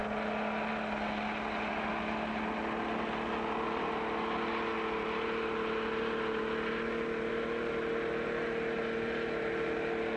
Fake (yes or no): no